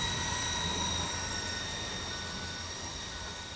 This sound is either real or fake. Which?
real